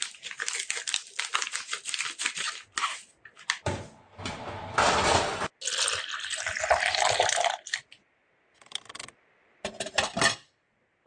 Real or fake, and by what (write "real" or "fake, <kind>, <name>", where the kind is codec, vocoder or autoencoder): real